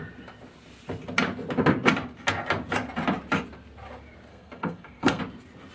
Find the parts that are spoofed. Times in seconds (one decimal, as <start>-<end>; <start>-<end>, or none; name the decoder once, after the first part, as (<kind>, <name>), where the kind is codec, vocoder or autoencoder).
4.3-5.2 (codec, SNAC)